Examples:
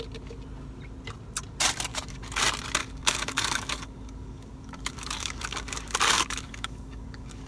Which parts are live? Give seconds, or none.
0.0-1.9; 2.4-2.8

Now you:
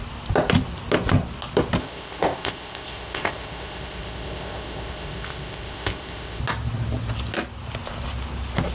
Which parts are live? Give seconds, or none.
0.0-1.8; 6.4-8.7

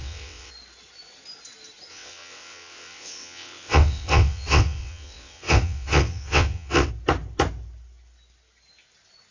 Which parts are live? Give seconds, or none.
0.5-1.9; 6.9-9.3

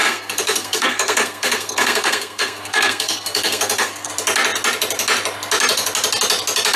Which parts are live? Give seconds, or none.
4.1-6.8

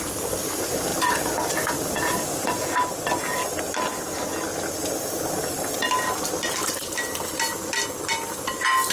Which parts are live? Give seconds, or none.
3.4-8.9